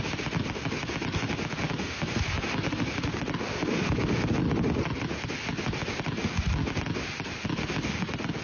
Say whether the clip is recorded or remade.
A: recorded